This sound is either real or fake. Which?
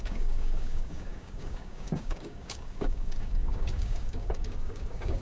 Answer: fake